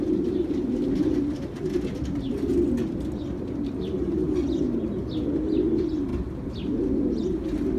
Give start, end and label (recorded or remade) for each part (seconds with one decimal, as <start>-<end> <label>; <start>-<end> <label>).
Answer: 0.0-7.8 recorded